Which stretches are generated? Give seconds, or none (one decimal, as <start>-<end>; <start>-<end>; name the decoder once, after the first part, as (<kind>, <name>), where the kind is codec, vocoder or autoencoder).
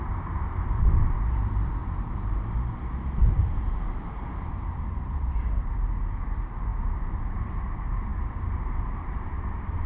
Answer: 0.0-9.9 (vocoder, BigVGAN v2)